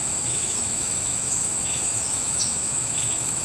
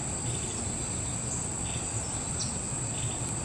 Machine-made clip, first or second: first